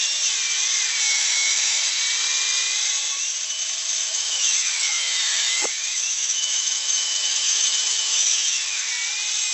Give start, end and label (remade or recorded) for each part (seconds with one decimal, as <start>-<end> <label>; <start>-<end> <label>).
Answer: 0.0-1.1 recorded; 1.1-2.0 remade; 2.0-4.1 recorded; 4.1-8.9 remade; 8.9-9.5 recorded